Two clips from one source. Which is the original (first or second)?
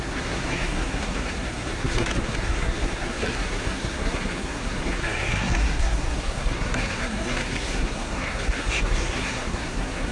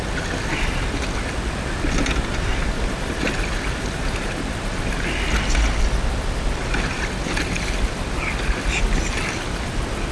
second